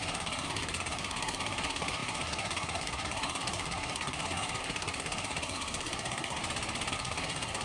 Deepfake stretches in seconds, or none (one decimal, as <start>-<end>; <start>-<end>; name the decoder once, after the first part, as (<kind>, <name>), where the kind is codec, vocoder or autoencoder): 0.0-6.4 (codec, SNAC); 6.9-7.6